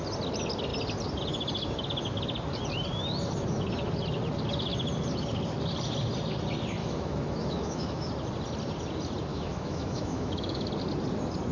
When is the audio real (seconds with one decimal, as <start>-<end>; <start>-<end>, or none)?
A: 0.0-6.8; 8.1-9.3; 10.7-11.5